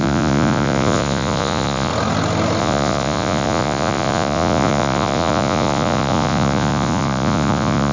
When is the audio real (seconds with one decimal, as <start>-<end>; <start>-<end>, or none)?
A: 1.9-2.6